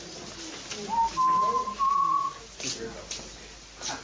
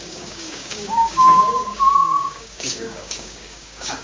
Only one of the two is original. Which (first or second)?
first